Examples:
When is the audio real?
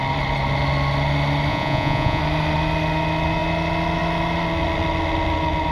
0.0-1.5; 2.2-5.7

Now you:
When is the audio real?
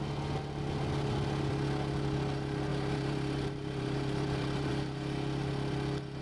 0.0-2.7; 4.7-6.2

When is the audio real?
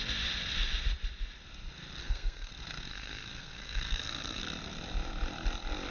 0.0-2.0; 2.5-2.9; 4.4-5.9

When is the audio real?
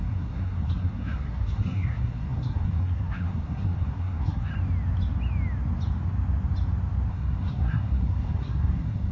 4.5-7.1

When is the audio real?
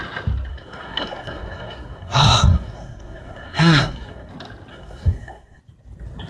0.0-0.5; 4.3-4.7; 5.6-6.3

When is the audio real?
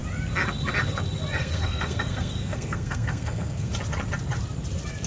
0.0-1.4; 3.7-5.1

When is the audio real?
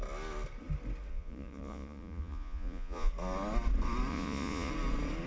0.0-1.1; 3.1-4.1; 4.7-5.3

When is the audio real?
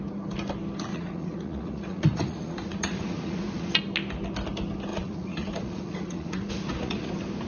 0.0-0.9; 3.7-4.9; 7.1-7.5